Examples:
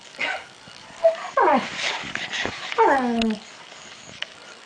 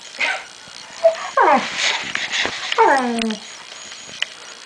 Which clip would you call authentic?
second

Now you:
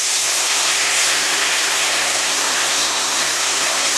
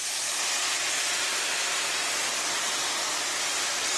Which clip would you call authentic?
second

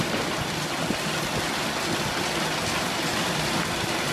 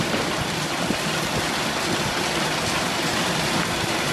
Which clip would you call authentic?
first